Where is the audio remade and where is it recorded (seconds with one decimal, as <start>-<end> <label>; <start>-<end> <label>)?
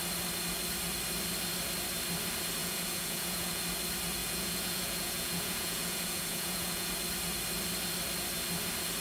0.0-2.6 recorded; 2.6-3.6 remade; 3.6-4.2 recorded; 4.2-6.9 remade; 6.9-9.0 recorded